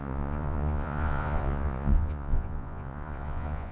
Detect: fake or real fake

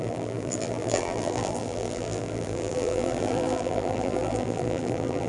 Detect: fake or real fake